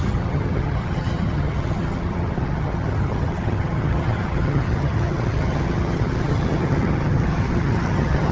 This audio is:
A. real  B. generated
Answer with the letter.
B